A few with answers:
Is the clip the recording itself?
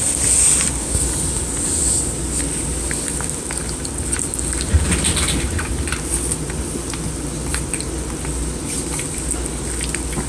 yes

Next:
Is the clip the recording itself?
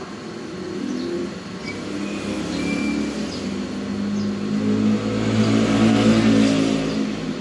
yes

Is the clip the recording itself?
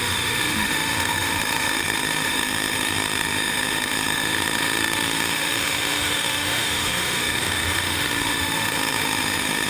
no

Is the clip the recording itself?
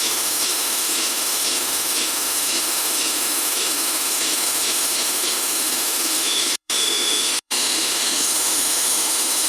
no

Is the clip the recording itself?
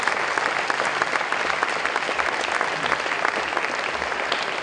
yes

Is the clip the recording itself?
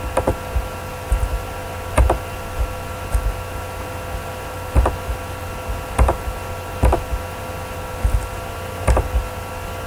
yes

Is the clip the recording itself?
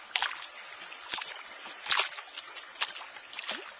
yes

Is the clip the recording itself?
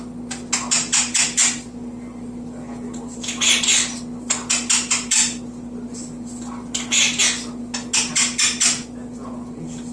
yes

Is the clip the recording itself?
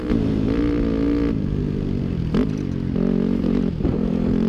yes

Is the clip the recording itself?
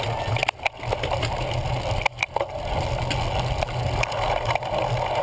yes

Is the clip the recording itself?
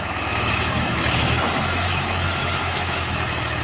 no